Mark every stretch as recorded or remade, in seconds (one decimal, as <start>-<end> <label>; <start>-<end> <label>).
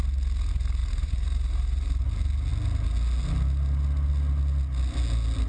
0.0-0.8 recorded; 0.8-2.0 remade; 2.0-5.5 recorded